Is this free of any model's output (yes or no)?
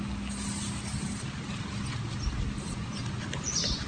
yes